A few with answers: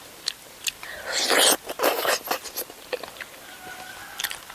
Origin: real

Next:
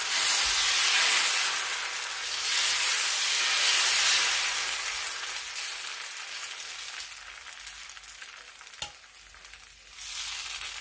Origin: real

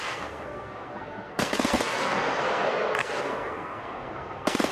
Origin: fake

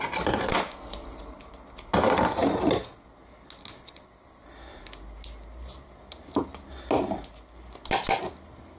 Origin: real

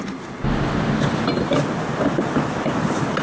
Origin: real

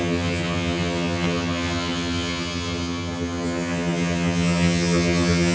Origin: fake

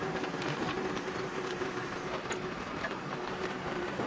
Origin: fake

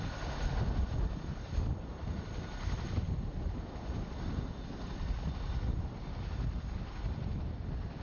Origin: real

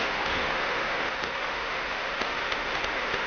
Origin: fake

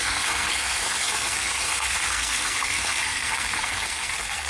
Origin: fake